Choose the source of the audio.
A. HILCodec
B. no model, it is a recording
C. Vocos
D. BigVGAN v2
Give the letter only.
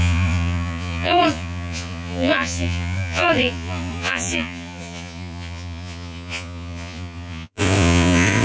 C